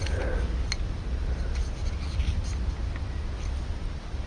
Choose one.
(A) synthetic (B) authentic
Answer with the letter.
B